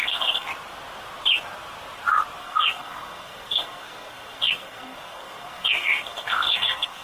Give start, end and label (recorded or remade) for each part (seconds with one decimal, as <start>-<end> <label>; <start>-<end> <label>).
0.0-0.5 remade; 0.5-2.4 recorded; 2.4-7.0 remade